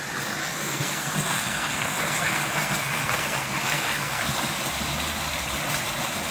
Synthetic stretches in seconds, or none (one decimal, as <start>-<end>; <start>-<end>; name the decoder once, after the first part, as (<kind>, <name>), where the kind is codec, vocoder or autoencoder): 0.4-4.2 (codec, SNAC)